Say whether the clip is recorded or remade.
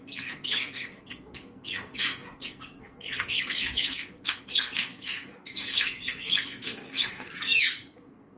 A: remade